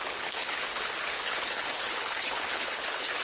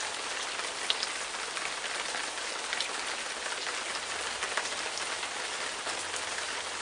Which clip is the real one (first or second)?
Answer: second